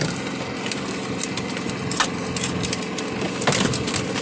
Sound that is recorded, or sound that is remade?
recorded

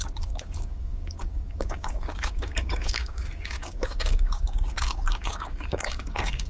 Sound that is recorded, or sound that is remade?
remade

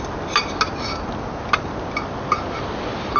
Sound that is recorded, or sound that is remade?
recorded